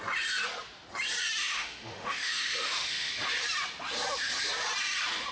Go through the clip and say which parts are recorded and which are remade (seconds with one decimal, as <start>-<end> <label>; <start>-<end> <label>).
0.0-1.4 recorded; 1.4-3.1 remade; 3.1-5.3 recorded